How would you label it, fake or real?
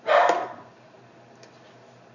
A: real